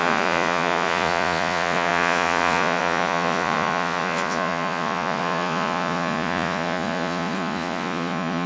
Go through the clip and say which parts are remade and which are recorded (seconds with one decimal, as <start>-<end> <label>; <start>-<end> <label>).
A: 0.0-8.5 remade